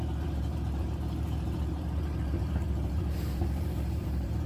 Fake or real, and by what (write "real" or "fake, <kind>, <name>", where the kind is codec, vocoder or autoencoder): fake, vocoder, BigVGAN v2